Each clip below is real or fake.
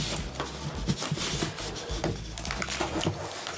real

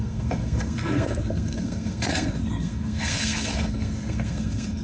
fake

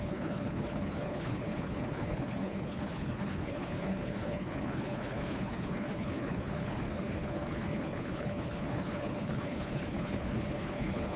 fake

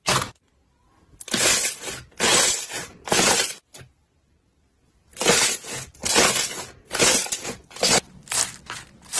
real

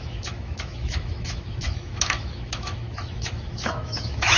fake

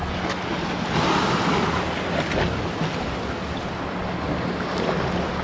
real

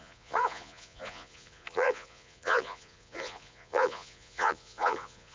fake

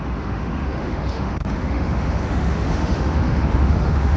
fake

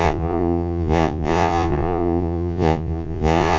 fake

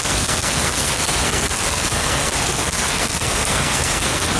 fake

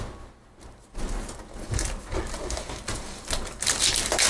real